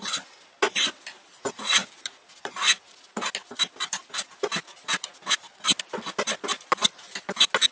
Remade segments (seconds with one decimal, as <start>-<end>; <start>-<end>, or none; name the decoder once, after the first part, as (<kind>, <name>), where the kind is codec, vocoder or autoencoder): none